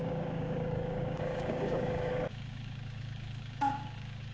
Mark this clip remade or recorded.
remade